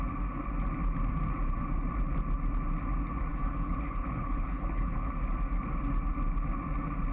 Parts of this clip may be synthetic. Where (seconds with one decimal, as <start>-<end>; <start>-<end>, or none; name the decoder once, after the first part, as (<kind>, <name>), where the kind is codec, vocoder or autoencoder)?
3.3-5.1 (codec, HILCodec)